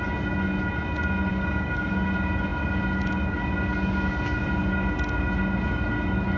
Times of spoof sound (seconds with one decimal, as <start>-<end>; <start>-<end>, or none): 1.3-1.9